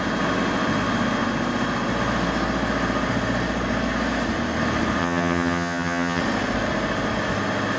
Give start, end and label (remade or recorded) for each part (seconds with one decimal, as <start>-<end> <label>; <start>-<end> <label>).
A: 0.0-5.0 recorded; 5.0-6.2 remade; 6.2-7.8 recorded